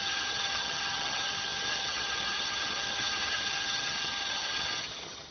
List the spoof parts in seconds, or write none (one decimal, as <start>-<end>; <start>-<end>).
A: 0.0-5.3